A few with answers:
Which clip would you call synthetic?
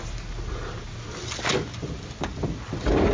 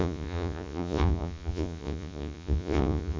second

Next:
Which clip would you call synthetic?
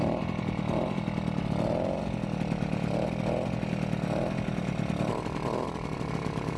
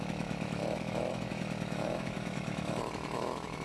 second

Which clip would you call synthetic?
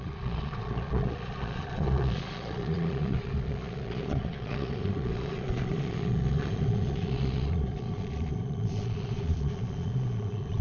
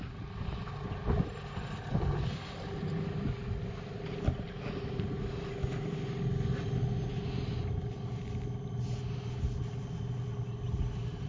first